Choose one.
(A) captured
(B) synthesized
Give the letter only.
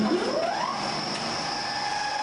A